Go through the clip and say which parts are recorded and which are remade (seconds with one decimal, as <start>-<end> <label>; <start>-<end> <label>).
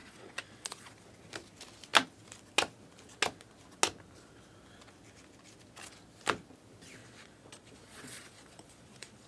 0.0-0.9 remade; 0.9-7.0 recorded; 7.0-9.3 remade